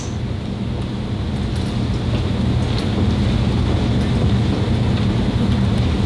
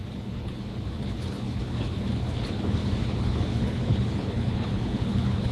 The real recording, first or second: first